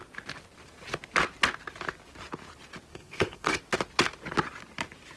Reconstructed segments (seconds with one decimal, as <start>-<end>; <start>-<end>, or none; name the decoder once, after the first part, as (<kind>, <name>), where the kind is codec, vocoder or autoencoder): 2.9-3.6 (codec, SNAC)